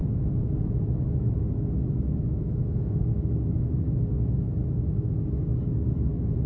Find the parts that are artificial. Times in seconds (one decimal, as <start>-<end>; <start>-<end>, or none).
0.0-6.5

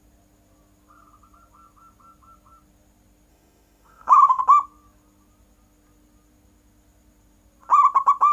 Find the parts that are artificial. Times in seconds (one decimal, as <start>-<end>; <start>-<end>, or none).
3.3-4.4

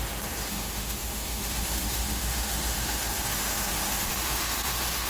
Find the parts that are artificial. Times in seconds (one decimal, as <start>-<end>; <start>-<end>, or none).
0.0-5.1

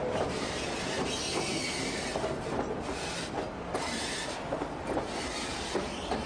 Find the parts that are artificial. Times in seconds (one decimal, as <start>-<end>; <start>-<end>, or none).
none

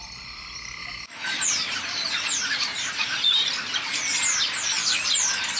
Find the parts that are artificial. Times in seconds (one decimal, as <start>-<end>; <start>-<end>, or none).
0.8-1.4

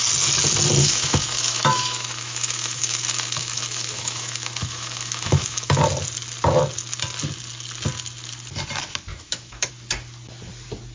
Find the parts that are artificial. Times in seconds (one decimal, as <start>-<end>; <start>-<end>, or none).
0.8-5.8; 9.1-9.7

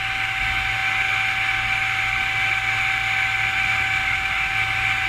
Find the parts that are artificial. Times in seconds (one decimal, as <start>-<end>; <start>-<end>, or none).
4.0-4.5

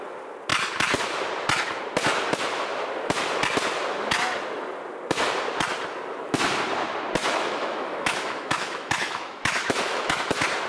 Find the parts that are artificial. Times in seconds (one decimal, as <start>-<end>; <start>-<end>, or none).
7.2-10.2